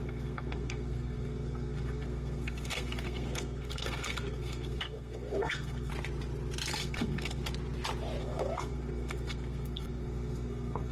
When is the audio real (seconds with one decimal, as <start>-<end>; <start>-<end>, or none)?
5.9-6.7; 7.4-8.2